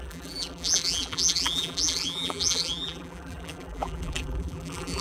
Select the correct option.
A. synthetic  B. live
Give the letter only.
A